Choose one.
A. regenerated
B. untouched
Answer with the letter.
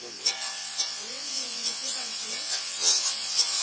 A